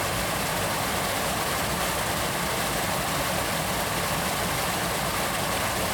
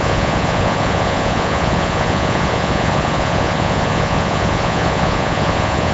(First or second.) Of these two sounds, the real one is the first